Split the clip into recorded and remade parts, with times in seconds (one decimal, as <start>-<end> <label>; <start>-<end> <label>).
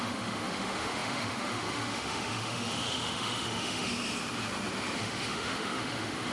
0.0-3.9 remade; 3.9-5.0 recorded; 5.0-6.3 remade